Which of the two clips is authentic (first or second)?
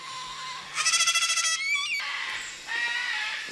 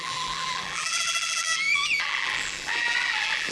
first